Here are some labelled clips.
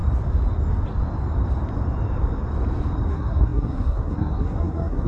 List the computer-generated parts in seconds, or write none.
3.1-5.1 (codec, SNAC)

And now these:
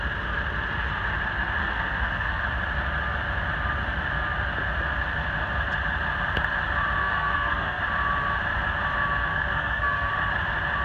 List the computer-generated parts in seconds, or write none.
1.6-2.4 (codec, SNAC); 7.0-7.8; 9.2-10.1

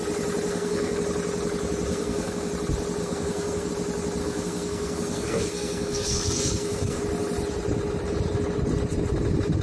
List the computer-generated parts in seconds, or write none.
0.5-1.0 (codec, SNAC); 1.9-2.5; 3.0-3.7; 4.2-7.0

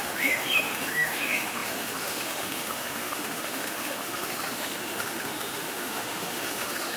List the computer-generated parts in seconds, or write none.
0.0-7.0 (autoencoder, DAC-VAE)

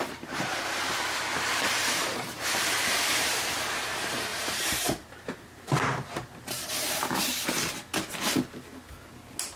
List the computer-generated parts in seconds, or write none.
0.0-7.9 (vocoder, BigVGAN v2)

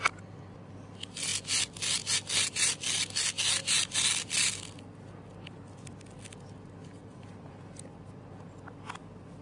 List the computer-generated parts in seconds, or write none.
none

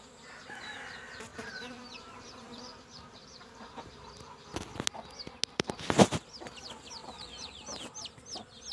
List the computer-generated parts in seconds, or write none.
1.3-4.1 (vocoder, BigVGAN v2); 7.0-7.8

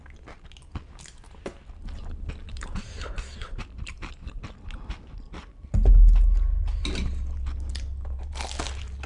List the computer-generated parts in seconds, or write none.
2.4-4.3 (vocoder, BigVGAN v2)